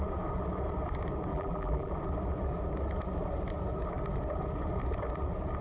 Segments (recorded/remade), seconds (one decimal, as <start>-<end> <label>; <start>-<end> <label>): 0.0-1.3 recorded; 1.3-1.9 remade; 1.9-5.6 recorded